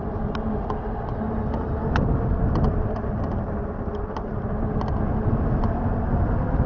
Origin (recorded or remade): recorded